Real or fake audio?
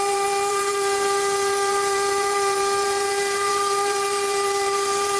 fake